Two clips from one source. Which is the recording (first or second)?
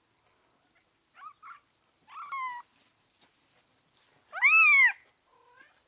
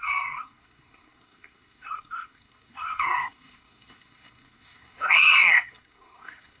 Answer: first